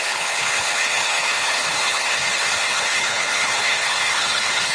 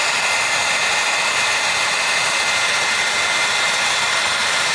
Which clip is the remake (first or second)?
first